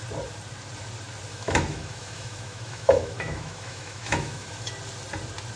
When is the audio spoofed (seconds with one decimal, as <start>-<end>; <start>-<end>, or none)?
1.3-4.7